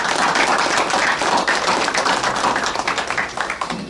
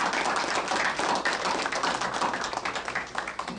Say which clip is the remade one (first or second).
first